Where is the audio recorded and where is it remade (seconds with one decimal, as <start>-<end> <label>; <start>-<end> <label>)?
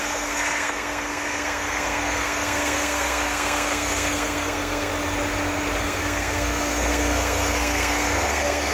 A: 0.0-4.9 remade; 4.9-5.8 recorded; 5.8-8.7 remade